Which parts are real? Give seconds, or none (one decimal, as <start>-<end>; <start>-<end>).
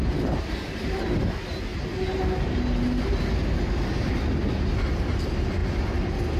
0.0-6.4